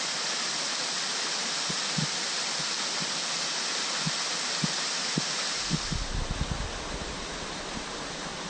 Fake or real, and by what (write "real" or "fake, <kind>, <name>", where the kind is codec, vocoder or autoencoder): real